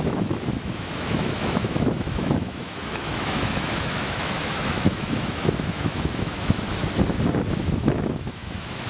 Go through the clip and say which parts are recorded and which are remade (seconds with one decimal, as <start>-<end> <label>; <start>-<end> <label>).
0.0-6.8 remade; 6.8-7.6 recorded; 7.6-8.9 remade